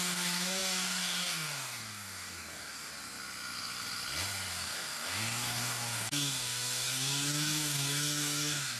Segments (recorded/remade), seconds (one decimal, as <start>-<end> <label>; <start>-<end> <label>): 0.0-2.9 remade; 2.9-4.5 recorded; 4.5-8.8 remade